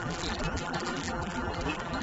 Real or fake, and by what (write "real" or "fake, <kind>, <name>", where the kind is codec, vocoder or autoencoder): fake, vocoder, BigVGAN v2